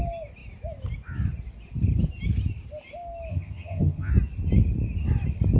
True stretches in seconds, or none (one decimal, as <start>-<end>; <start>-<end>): 0.0-3.3; 4.1-5.6